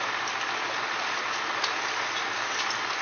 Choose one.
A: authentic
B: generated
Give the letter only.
A